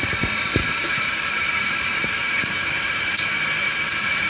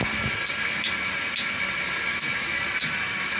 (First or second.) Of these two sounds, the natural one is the second